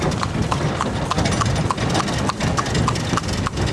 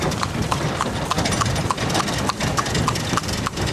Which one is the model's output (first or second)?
second